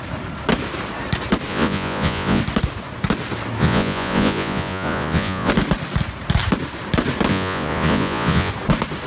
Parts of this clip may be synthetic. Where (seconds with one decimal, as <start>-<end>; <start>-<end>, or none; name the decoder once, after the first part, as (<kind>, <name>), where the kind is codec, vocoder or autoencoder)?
1.5-2.4 (vocoder, Vocos); 3.6-5.5; 7.3-8.5